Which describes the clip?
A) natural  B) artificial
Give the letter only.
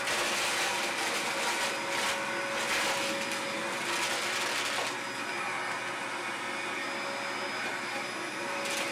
A